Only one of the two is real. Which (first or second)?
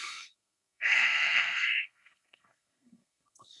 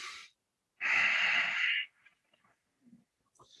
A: second